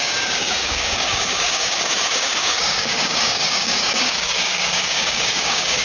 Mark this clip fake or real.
fake